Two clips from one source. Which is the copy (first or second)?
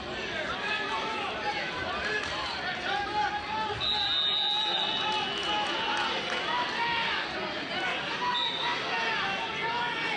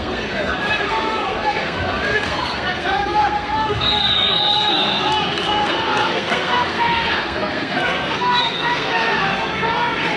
second